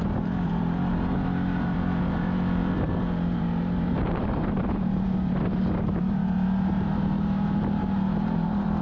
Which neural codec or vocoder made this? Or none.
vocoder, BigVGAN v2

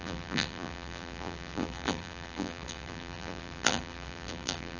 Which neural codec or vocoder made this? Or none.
vocoder, BigVGAN v2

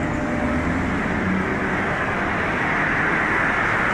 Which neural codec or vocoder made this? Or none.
none